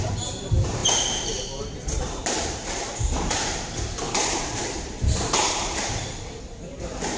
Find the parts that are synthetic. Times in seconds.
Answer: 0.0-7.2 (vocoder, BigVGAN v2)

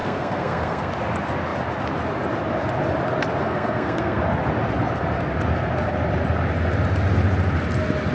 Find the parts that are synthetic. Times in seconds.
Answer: 0.0-0.9 (codec, SNAC); 3.4-4.2